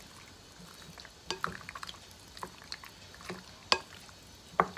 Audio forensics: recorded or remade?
recorded